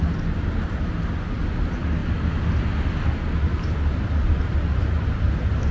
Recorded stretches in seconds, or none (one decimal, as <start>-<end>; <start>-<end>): 0.0-2.0; 2.6-5.7